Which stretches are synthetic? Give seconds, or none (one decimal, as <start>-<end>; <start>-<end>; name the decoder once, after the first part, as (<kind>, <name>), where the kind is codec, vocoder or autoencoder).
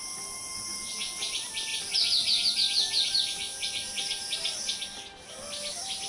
1.7-2.5 (vocoder, BigVGAN v2)